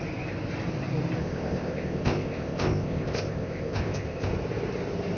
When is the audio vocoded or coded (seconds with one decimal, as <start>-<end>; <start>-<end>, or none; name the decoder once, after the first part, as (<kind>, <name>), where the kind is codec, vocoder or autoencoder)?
1.2-4.3 (codec, ZipCodec)